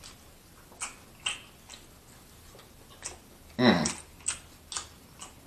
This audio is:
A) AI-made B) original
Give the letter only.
B